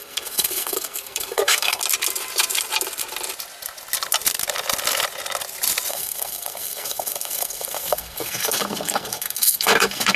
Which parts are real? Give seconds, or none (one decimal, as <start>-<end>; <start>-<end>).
1.8-5.9